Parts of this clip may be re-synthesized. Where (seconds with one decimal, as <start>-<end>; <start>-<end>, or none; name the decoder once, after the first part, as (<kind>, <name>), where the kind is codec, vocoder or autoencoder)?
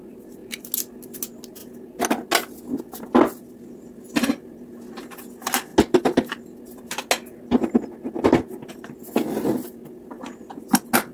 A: none